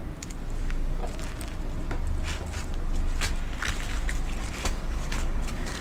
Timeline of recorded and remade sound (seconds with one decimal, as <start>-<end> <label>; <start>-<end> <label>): 0.0-0.6 recorded; 0.6-1.0 remade; 1.0-4.5 recorded; 4.5-5.8 remade